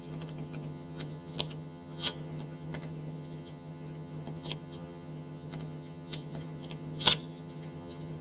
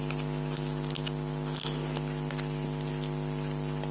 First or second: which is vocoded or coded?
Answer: first